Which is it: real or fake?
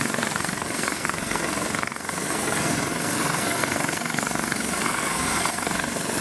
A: fake